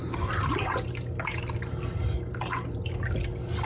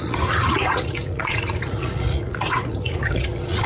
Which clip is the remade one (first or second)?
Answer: second